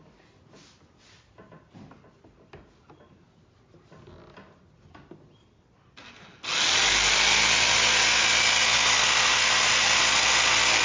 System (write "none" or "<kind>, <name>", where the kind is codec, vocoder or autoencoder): none